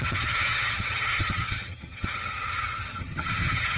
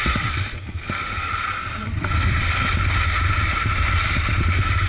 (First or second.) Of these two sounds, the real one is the second